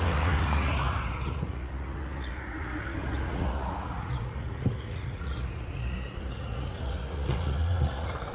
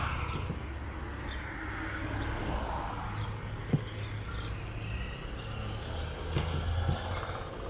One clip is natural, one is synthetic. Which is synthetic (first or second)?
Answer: first